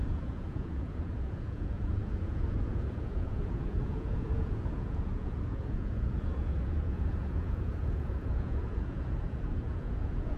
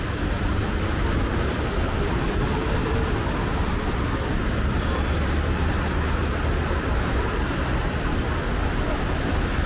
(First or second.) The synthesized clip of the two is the first